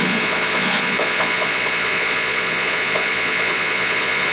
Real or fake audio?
fake